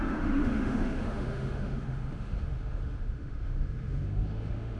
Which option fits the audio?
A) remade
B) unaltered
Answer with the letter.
A